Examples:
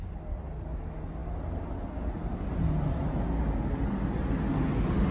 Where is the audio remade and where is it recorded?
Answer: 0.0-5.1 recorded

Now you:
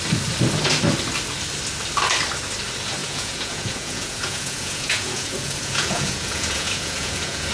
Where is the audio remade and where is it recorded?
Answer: 0.0-3.0 recorded; 3.0-7.5 remade

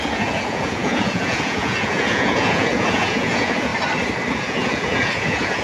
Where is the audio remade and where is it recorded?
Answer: 0.0-3.7 remade; 3.7-4.4 recorded; 4.4-5.6 remade

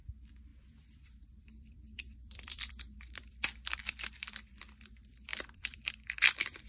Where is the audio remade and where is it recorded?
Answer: 0.0-6.7 remade

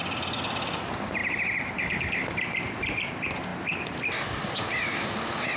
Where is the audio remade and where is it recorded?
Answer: 0.0-5.6 recorded